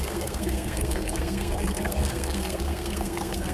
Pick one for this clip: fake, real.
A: fake